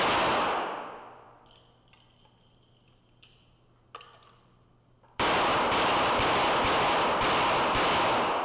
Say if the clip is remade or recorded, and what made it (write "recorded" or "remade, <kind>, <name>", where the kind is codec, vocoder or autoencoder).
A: recorded